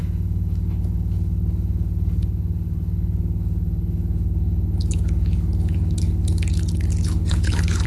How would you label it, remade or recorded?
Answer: remade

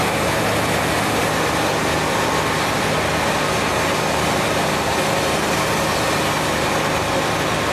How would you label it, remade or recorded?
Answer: recorded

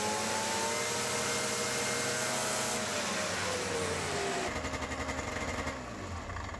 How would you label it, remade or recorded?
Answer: recorded